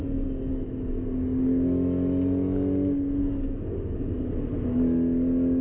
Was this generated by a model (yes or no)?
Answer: no